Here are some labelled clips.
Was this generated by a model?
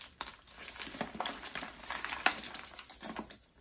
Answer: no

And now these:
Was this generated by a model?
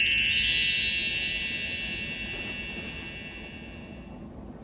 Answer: no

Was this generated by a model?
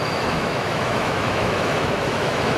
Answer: yes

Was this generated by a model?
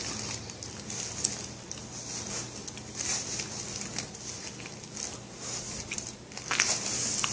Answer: no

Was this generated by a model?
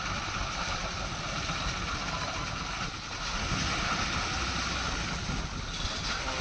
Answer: no